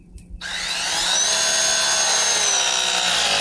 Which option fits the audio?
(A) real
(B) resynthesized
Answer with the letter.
A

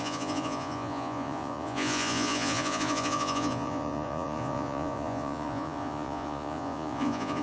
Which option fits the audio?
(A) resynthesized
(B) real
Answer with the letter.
A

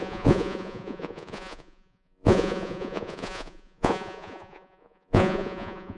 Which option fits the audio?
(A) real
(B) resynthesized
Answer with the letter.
B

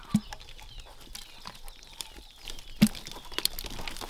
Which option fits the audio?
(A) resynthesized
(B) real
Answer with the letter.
B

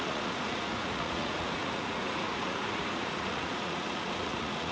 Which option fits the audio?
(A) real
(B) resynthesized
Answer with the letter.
B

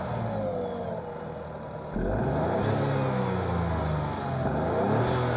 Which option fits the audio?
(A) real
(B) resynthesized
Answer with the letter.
A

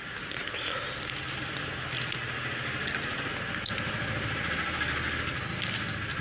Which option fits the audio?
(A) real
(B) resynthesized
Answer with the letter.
A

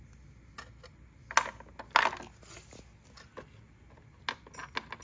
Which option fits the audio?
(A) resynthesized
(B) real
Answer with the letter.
B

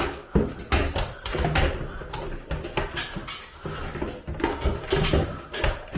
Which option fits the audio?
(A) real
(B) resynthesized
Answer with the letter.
A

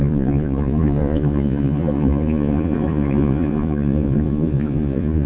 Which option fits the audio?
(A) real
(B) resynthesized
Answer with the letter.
B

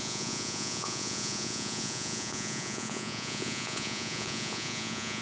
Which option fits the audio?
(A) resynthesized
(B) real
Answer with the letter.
A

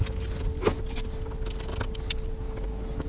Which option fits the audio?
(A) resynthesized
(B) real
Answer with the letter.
B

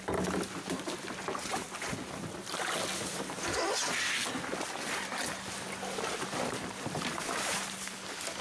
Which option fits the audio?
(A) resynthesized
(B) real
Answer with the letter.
B